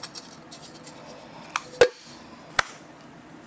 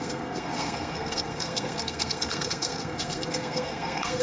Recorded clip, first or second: first